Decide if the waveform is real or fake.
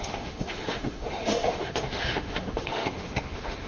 fake